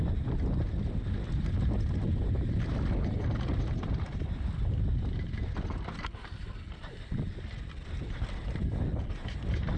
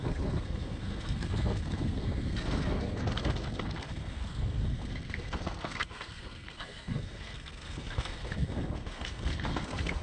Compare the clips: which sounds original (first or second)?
first